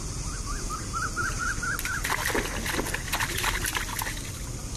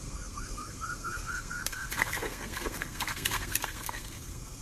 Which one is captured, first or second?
first